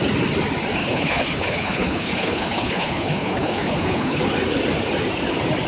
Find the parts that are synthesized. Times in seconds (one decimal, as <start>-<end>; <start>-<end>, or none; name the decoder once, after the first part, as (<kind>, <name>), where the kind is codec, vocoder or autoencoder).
0.8-4.2 (codec, HILCodec)